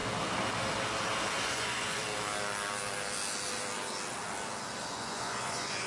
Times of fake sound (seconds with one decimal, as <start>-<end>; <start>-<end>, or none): 1.4-2.0; 4.8-5.9